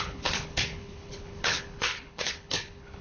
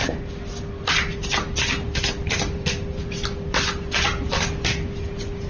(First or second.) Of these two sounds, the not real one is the first